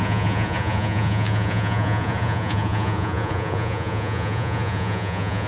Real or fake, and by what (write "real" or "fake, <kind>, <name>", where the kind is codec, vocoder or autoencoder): fake, vocoder, Vocos